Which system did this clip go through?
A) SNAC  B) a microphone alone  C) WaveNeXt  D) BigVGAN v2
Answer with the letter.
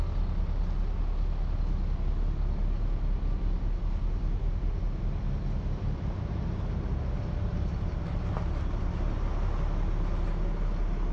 B